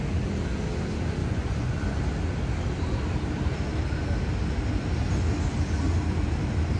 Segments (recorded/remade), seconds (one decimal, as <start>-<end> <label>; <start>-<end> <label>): 0.0-1.2 recorded; 1.2-2.0 remade; 2.0-6.8 recorded